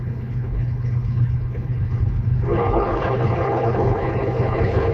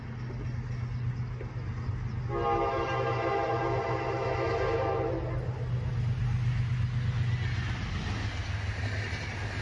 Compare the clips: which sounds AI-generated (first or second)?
first